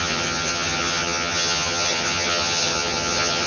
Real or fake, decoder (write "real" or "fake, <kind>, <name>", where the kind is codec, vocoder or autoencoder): fake, vocoder, HiFi-GAN